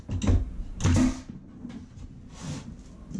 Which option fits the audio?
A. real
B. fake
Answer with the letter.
A